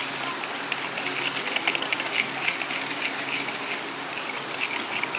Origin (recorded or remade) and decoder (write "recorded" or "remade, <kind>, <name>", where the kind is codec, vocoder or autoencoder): recorded